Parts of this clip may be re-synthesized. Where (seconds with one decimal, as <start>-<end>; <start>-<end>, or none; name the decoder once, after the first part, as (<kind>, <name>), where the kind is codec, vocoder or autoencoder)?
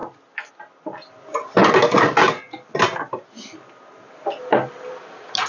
none